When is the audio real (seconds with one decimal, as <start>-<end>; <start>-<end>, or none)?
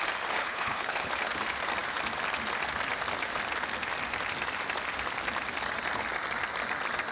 0.0-0.4; 1.1-7.1